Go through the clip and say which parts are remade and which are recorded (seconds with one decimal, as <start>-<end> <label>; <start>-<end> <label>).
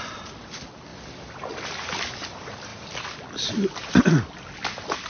0.0-5.1 recorded